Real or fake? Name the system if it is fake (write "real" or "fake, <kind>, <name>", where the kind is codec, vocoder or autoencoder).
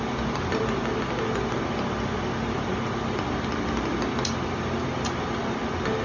real